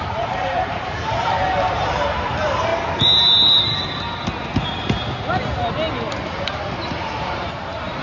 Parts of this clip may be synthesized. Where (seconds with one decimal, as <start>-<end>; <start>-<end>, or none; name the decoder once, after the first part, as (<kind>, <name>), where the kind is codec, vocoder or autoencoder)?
0.0-2.7 (vocoder, BigVGAN v2); 7.2-8.0